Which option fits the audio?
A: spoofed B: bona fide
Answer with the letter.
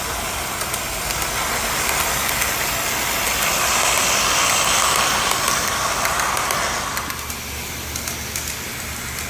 B